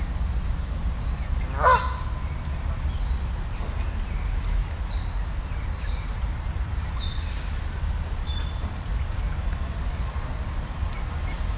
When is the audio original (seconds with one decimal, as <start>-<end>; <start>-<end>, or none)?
0.0-11.6